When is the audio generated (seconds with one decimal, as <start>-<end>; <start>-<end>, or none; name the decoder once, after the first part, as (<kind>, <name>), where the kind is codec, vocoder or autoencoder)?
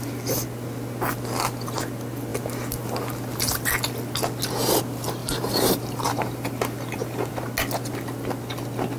5.2-7.3 (vocoder, BigVGAN v2)